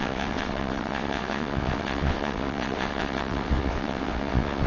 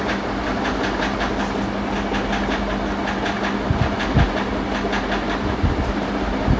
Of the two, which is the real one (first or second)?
second